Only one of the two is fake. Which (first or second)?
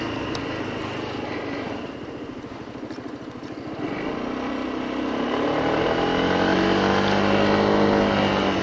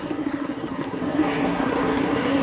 second